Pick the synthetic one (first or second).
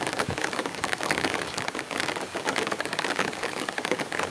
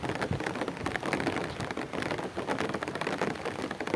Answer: first